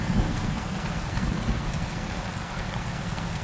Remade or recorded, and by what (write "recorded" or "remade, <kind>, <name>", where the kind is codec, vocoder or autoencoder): remade, codec, SNAC